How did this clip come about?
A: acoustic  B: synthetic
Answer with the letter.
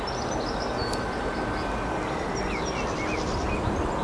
A